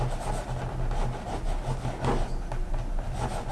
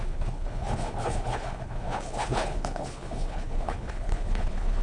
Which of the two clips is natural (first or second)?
first